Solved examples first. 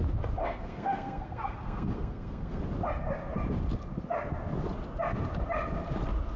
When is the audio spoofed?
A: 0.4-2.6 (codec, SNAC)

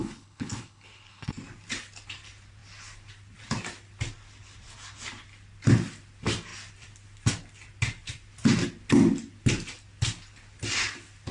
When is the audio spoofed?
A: 0.0-1.3 (codec, HILCodec)

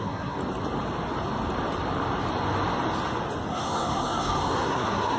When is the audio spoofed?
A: 0.0-0.4 (codec, SNAC); 3.5-5.2